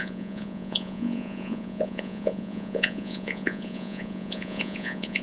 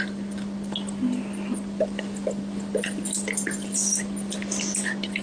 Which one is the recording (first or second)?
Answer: second